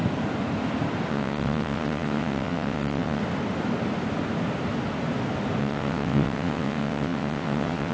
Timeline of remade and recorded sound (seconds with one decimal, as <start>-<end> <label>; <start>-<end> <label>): 0.0-1.1 recorded; 1.1-3.2 remade; 3.2-5.6 recorded; 5.6-7.9 remade